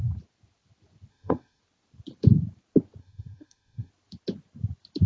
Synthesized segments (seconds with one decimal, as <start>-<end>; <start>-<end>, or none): 1.1-1.6; 3.0-3.9